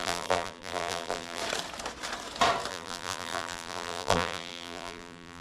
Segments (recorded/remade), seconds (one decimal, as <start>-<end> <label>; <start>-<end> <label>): 0.0-1.4 remade; 1.4-2.7 recorded; 2.7-5.4 remade